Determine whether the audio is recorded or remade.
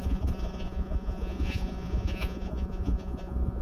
remade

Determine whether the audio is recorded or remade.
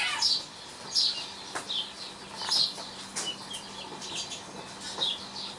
recorded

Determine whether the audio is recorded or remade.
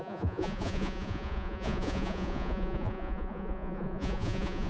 remade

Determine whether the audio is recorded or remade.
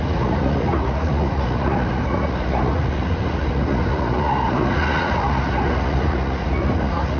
remade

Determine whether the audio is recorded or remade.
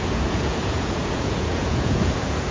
remade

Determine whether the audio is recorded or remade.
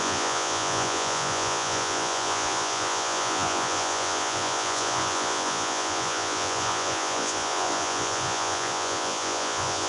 remade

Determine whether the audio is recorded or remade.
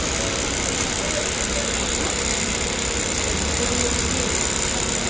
recorded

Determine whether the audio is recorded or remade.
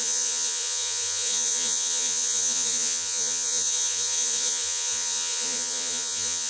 remade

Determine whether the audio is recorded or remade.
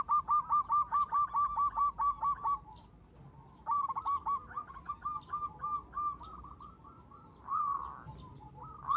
recorded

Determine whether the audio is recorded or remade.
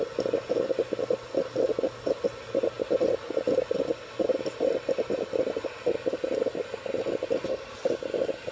recorded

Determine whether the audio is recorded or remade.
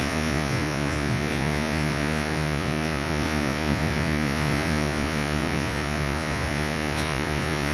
remade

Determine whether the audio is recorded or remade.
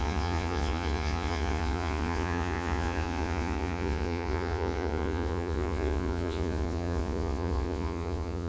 remade